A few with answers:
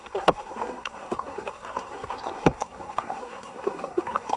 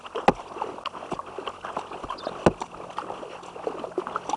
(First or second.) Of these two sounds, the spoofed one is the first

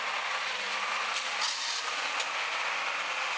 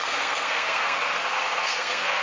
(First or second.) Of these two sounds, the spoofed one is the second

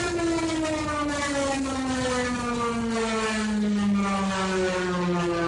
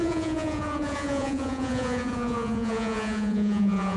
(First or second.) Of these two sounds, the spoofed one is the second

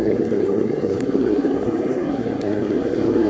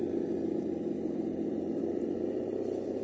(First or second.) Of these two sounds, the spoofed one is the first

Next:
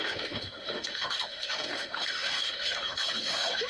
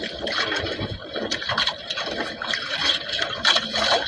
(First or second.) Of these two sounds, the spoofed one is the first